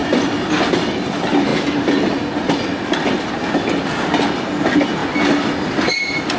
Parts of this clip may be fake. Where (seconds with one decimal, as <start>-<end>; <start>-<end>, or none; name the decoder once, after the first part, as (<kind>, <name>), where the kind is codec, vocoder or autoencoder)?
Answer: none